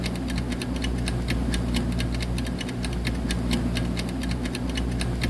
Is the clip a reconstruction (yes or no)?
no